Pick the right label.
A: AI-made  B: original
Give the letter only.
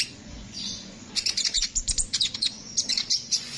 A